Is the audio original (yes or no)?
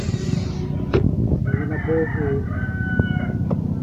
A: yes